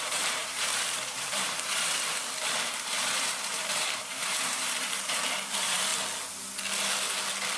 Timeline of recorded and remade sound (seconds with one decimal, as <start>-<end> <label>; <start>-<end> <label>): 0.0-5.9 remade; 5.9-7.6 recorded